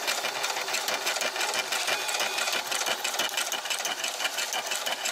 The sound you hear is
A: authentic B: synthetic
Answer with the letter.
A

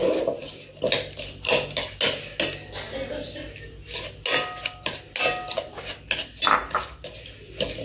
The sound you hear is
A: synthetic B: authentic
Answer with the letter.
B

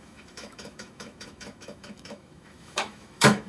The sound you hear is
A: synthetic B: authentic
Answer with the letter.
A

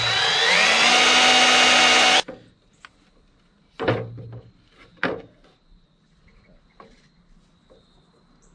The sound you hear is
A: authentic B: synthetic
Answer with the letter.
A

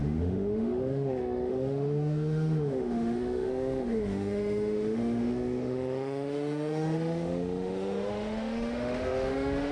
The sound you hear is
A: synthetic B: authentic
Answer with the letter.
A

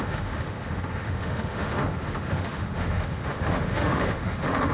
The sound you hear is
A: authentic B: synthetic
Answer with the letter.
B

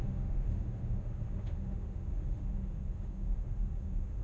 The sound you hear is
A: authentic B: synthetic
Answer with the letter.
B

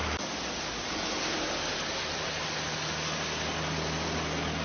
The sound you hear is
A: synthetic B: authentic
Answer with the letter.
B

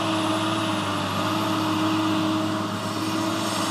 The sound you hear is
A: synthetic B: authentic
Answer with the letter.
B